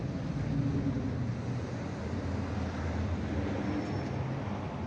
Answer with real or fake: real